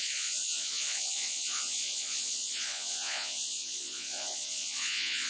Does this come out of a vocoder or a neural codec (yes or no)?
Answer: yes